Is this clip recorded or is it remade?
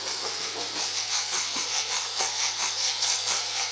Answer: remade